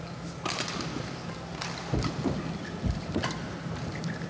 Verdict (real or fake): real